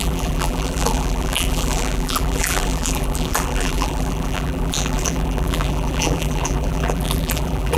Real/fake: fake